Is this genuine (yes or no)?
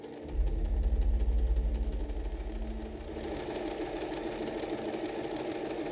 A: yes